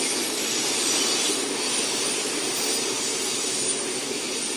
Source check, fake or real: real